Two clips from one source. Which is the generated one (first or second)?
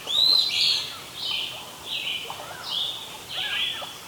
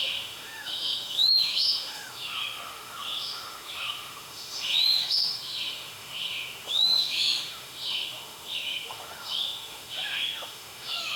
second